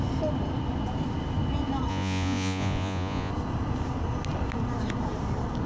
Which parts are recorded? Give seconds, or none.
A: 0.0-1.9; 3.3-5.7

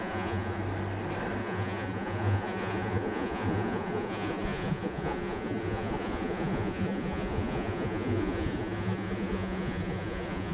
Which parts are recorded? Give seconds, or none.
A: 0.6-1.4

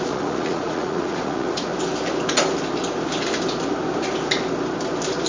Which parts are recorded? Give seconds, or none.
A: 1.7-5.3

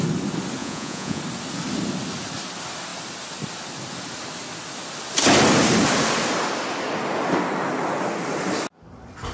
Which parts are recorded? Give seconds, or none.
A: 0.0-0.6; 1.2-9.3